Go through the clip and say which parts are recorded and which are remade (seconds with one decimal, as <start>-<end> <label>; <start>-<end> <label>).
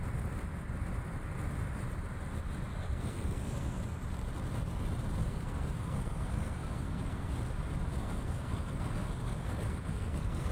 0.0-2.7 recorded; 2.7-3.8 remade; 3.8-5.2 recorded; 5.2-7.3 remade; 7.3-8.0 recorded; 8.0-10.5 remade